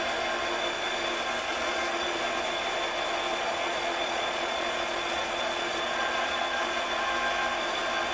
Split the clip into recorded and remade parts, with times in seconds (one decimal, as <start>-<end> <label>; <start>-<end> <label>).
0.0-1.5 recorded; 1.5-2.2 remade; 2.2-3.3 recorded; 3.3-7.0 remade; 7.0-8.1 recorded